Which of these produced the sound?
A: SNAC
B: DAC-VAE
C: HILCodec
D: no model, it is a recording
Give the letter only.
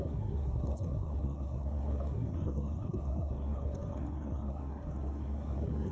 A